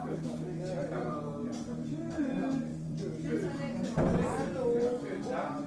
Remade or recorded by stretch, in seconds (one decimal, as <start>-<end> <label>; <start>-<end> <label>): 0.0-0.8 recorded; 0.8-2.2 remade; 2.2-2.7 recorded; 2.7-4.3 remade; 4.3-5.7 recorded